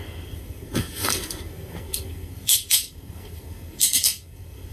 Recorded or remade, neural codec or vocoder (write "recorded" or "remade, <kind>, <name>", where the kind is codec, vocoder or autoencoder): remade, codec, SNAC